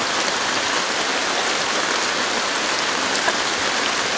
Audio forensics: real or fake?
real